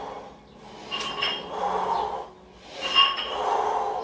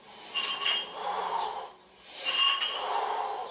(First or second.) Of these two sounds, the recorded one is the first